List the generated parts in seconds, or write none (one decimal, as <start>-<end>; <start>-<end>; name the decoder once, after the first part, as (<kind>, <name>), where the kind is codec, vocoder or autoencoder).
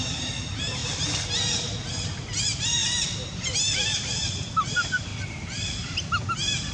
0.0-0.8 (vocoder, BigVGAN v2); 2.4-2.8; 4.0-5.1